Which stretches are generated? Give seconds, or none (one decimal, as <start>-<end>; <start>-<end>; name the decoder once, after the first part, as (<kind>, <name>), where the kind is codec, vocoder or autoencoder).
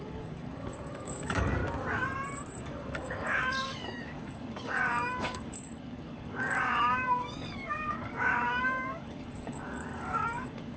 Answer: 0.0-1.6 (codec, DAC); 2.6-10.8